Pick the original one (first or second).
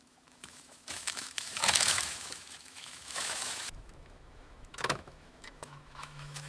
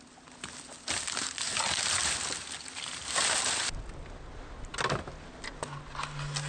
second